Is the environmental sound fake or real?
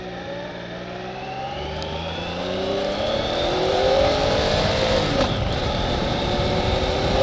fake